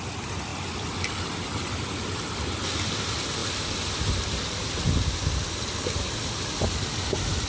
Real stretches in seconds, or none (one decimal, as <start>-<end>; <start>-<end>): 0.0-7.5